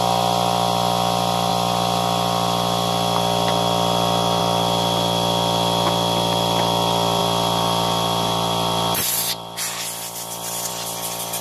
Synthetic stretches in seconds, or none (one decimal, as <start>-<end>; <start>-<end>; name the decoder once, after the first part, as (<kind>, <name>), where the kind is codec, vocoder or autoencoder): none